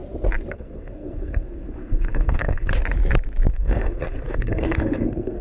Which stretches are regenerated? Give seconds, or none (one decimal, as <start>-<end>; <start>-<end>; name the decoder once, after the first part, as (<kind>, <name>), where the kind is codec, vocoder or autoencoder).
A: 0.5-2.7 (codec, SNAC); 3.5-5.4